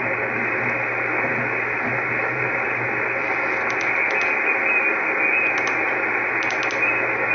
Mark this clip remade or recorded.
recorded